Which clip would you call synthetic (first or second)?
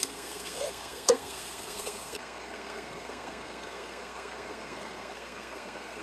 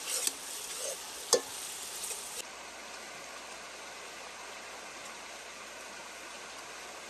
first